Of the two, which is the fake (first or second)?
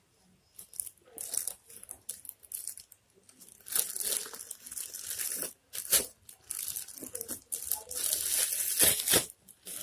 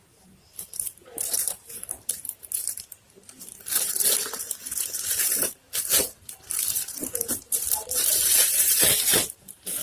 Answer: second